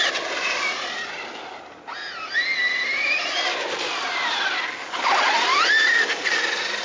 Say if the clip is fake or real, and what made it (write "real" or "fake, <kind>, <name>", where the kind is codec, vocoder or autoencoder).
real